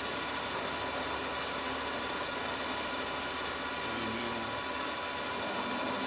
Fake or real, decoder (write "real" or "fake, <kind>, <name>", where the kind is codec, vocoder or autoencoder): real